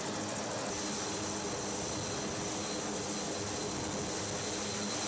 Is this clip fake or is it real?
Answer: real